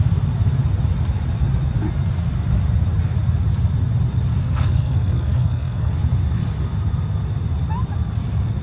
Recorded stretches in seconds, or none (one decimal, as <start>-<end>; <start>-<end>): 0.0-4.4; 5.9-8.6